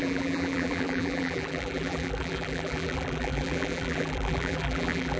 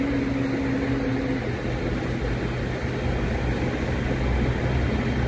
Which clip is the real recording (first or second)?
second